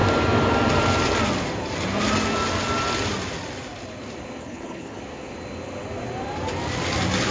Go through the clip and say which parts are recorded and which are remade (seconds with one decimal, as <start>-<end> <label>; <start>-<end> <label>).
0.0-4.4 recorded; 4.4-5.0 remade; 5.0-7.3 recorded